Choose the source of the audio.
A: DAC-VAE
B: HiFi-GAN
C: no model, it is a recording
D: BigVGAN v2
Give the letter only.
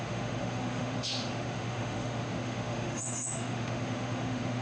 A